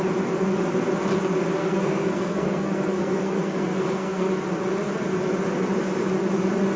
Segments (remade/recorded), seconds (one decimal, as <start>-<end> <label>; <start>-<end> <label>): 0.0-1.6 recorded; 1.6-4.3 remade; 4.3-6.8 recorded